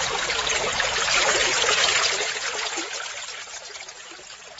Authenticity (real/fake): fake